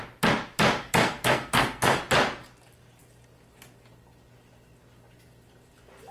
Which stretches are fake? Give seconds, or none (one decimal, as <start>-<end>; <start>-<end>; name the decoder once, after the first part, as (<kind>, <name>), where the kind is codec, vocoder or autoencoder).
0.8-2.0 (codec, SNAC)